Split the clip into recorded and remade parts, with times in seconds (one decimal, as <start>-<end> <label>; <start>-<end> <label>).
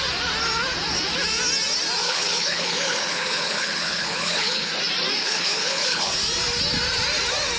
0.0-2.0 recorded; 2.0-4.7 remade; 4.7-5.2 recorded; 5.2-6.1 remade; 6.1-7.6 recorded